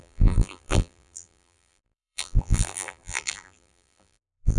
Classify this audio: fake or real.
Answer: fake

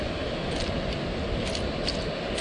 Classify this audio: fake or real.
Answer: real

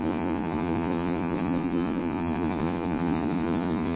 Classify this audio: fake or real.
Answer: fake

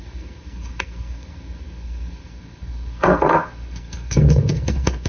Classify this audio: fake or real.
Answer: fake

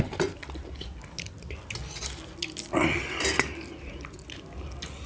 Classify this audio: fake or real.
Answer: real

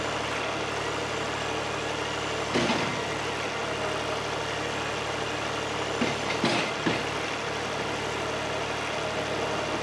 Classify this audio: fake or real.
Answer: real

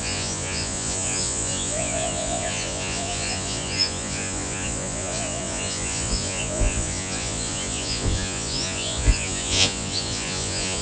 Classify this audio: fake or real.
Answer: fake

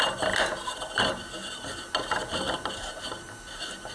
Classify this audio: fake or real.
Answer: real